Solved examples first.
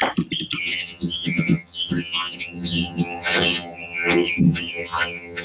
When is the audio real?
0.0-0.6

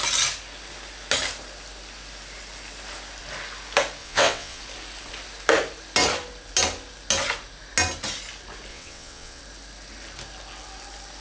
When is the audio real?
0.0-4.0; 4.6-8.7; 9.4-11.2